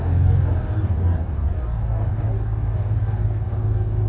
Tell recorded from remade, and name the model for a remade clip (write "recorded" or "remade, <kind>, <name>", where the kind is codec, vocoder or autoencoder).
remade, codec, DAC